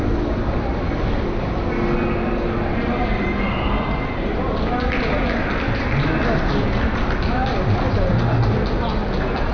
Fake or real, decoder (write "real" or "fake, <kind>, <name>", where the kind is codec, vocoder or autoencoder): real